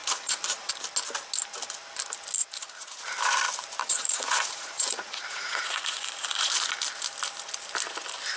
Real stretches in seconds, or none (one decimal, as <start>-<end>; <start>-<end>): 0.7-2.4; 3.0-3.8; 6.5-8.4